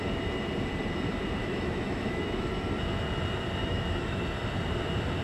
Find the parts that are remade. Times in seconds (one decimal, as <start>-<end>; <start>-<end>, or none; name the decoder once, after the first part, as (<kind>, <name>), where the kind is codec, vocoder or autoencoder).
1.4-2.5 (autoencoder, DAC-VAE); 3.6-4.2